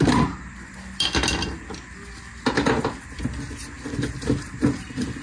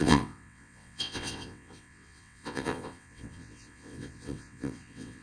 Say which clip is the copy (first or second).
second